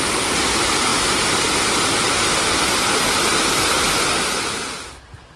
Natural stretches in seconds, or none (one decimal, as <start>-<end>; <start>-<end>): 0.0-5.4